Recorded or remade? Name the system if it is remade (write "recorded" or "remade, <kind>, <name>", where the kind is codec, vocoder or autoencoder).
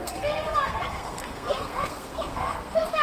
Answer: remade, codec, SNAC